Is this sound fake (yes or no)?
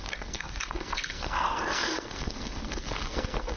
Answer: yes